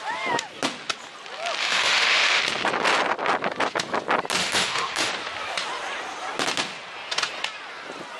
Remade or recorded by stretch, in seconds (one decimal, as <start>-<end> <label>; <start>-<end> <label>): 0.0-1.6 recorded; 1.6-2.4 remade; 2.4-4.4 recorded; 4.4-5.1 remade; 5.1-8.2 recorded